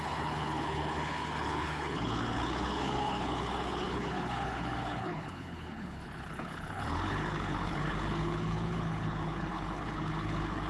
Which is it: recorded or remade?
remade